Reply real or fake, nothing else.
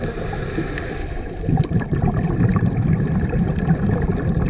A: real